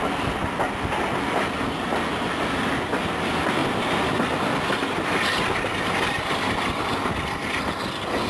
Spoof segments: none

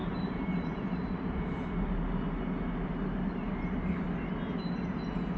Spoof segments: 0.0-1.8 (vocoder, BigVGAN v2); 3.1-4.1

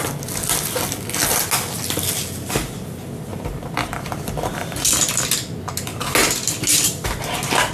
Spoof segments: 3.3-4.8 (vocoder, BigVGAN v2)

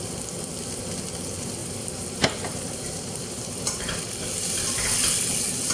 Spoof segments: 1.6-4.0 (vocoder, BigVGAN v2)

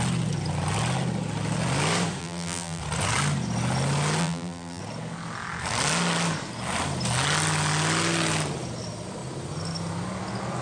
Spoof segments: 2.2-2.8 (vocoder, BigVGAN v2); 4.2-4.8

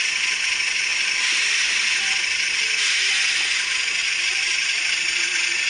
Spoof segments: 4.0-5.2 (vocoder, BigVGAN v2)